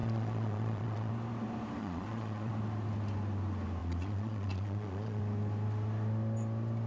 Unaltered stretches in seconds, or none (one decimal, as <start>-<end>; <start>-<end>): 1.1-1.8; 2.5-3.8; 5.2-6.9